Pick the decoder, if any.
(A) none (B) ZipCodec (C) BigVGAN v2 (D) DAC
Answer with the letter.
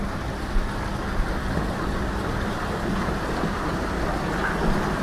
A